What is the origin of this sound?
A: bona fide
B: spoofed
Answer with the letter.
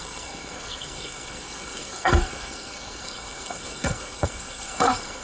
B